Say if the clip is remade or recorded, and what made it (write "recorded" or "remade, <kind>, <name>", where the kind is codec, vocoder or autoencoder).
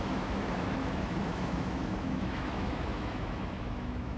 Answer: remade, autoencoder, DAC-VAE